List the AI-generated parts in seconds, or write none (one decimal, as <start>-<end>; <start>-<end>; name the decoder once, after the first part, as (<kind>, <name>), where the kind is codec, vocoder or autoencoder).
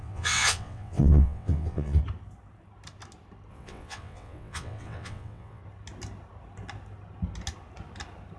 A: 0.0-2.0 (vocoder, WaveNeXt); 3.5-5.6